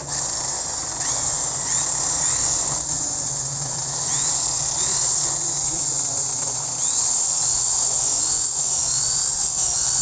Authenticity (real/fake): fake